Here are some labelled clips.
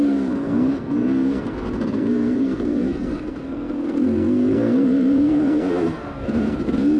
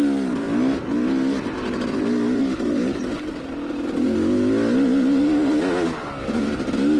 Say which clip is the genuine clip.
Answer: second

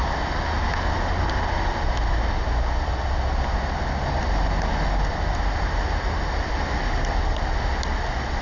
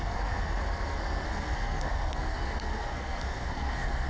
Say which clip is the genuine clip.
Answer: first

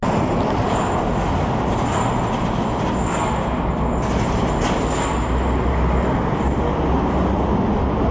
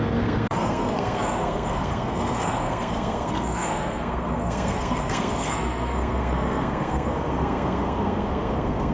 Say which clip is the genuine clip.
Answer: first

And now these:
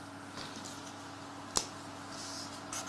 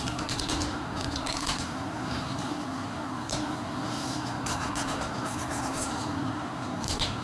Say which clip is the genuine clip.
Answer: first